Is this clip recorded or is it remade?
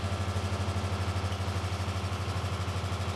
recorded